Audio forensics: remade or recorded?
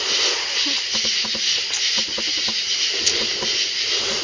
recorded